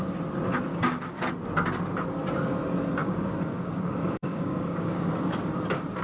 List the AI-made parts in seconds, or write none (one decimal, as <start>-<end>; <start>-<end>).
0.7-1.3; 3.0-5.5